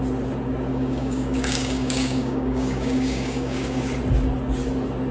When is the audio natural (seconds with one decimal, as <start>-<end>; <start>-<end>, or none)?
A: 0.0-0.7; 3.8-5.1